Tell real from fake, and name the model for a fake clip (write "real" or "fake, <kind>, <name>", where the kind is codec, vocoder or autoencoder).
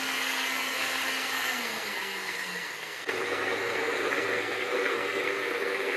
fake, codec, SNAC